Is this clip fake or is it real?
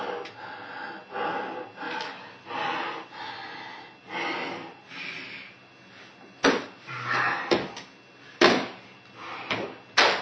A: real